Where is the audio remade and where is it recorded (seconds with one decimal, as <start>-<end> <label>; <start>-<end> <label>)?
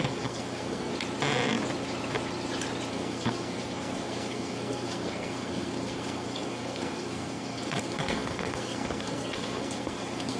0.0-0.9 remade; 0.9-2.9 recorded; 2.9-10.4 remade